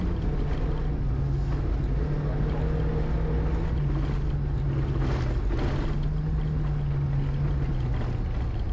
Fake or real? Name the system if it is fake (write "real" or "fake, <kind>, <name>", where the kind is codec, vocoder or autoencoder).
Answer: real